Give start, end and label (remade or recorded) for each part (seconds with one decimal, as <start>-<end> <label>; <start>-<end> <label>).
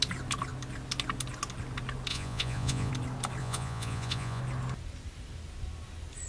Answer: 0.0-2.1 recorded; 2.1-2.9 remade; 2.9-3.4 recorded; 3.4-4.4 remade; 4.4-6.3 recorded